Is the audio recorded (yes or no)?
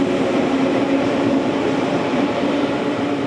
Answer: no